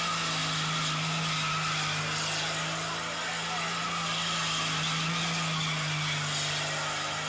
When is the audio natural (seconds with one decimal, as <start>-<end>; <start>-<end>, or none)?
0.0-7.3